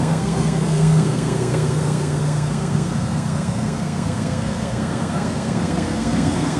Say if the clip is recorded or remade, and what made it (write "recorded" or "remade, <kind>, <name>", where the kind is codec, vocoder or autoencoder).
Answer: remade, codec, SNAC